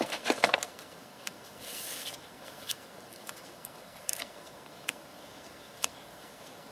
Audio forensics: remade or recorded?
remade